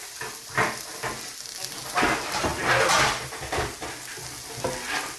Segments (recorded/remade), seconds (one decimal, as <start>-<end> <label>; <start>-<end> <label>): 0.0-5.2 recorded